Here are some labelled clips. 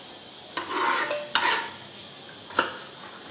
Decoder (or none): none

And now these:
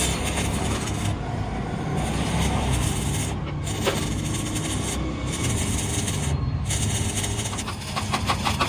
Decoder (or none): none